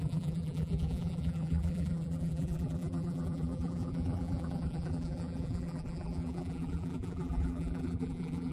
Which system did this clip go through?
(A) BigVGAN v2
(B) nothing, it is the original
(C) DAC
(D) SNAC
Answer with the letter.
A